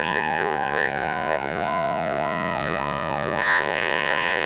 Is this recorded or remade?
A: remade